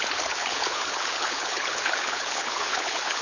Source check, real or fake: fake